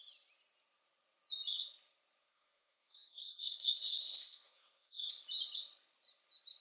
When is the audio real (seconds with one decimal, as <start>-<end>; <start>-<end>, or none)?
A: 0.0-2.2; 5.1-6.6